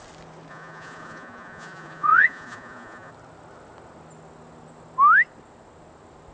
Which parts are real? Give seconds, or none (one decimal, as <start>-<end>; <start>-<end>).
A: 0.0-0.5; 3.1-6.3